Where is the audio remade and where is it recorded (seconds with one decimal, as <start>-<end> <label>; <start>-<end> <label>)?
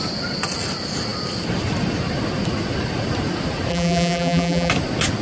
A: 0.0-3.7 recorded; 3.7-4.7 remade; 4.7-5.2 recorded